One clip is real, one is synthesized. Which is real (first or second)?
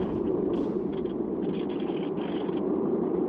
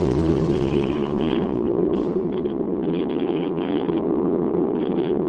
first